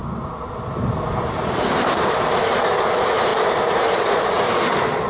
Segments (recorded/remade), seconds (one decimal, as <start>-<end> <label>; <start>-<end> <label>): 0.0-2.6 remade; 2.6-3.3 recorded; 3.3-4.6 remade; 4.6-5.1 recorded